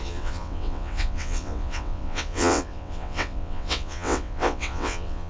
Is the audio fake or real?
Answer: fake